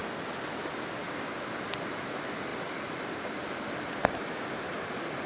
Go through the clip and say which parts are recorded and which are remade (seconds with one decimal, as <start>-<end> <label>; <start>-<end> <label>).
0.0-2.5 recorded; 2.5-5.3 remade